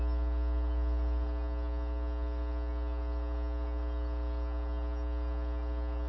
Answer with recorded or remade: recorded